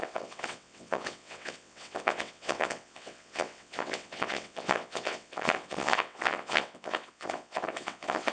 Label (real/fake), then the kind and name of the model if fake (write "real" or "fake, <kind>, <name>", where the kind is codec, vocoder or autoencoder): fake, vocoder, WaveNeXt